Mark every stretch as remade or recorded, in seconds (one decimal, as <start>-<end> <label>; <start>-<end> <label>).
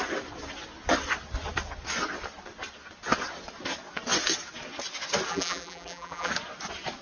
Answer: 0.0-5.3 recorded; 5.3-6.3 remade; 6.3-7.0 recorded